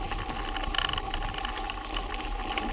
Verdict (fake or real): real